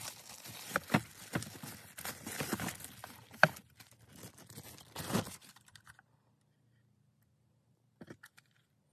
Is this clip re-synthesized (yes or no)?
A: no